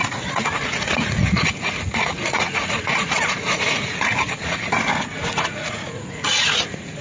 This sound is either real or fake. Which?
fake